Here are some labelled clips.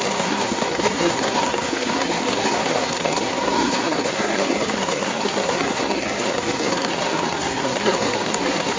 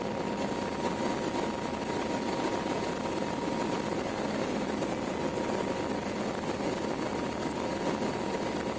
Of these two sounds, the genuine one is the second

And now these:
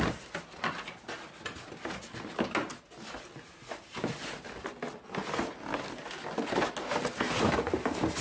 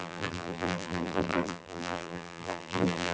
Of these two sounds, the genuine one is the first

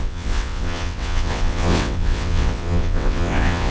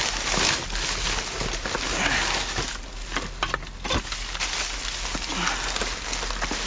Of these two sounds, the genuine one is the second